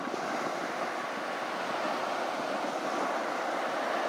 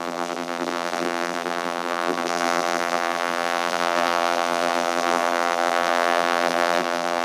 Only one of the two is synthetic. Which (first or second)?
second